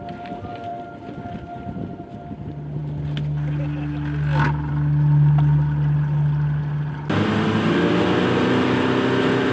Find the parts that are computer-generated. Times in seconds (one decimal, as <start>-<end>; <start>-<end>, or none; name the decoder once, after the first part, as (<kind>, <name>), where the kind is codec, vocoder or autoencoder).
none